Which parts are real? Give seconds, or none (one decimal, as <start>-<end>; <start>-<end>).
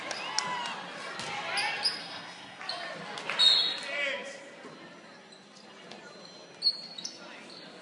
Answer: 0.0-2.0; 2.6-7.8